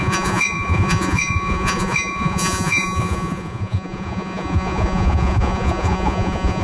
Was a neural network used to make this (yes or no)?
yes